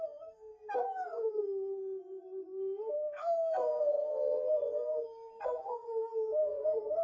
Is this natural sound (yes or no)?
no